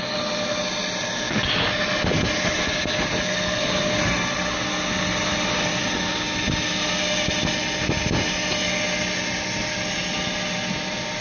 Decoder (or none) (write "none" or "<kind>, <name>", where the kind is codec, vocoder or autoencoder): none